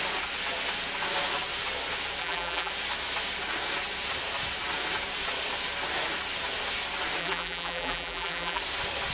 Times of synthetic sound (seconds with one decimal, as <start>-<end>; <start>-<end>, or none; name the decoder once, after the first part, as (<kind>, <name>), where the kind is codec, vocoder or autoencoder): 2.2-2.7 (vocoder, BigVGAN v2); 7.2-8.6